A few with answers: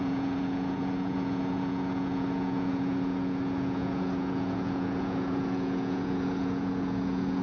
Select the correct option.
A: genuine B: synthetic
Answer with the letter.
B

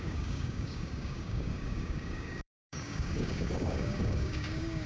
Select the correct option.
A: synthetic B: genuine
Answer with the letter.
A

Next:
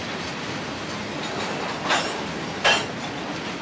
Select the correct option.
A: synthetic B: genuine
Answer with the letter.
B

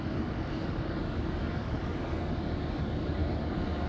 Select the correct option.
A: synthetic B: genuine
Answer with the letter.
A